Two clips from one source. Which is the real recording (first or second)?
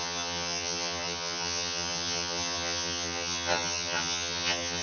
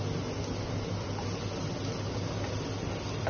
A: second